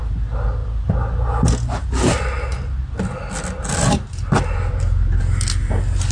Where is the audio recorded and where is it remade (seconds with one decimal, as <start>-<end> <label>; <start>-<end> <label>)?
0.0-6.1 recorded